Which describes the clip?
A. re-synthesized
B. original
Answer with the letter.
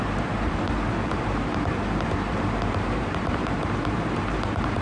A